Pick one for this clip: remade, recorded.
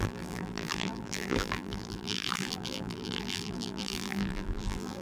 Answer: remade